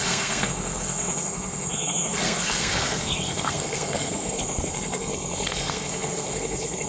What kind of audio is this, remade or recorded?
remade